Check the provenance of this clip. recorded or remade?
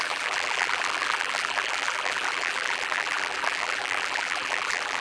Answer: remade